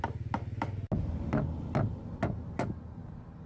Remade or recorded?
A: recorded